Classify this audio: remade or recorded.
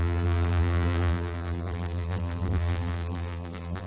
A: remade